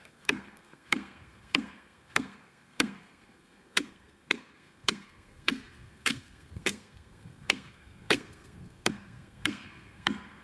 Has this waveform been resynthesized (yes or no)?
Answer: yes